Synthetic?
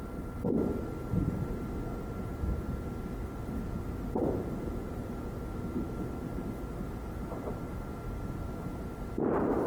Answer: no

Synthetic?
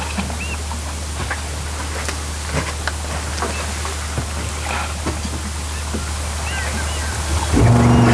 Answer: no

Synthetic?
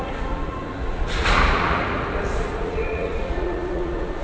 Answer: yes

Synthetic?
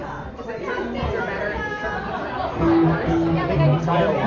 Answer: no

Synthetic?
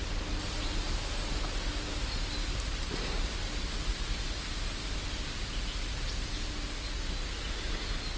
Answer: no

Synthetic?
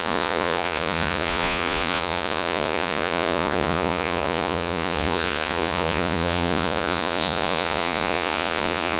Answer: yes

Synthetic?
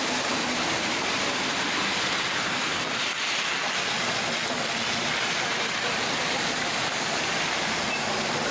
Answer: no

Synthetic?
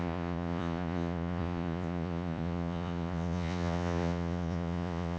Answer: yes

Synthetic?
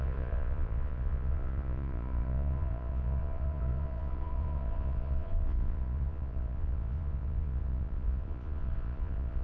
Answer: yes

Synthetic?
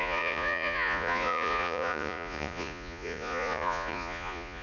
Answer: yes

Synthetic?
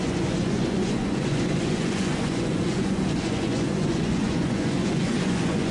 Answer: yes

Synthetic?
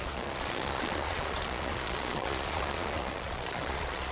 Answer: yes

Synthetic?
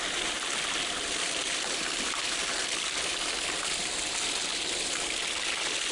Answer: no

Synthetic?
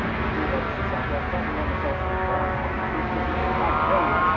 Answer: no